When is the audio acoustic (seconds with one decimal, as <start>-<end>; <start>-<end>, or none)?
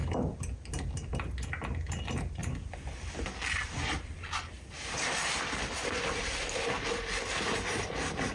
0.0-8.3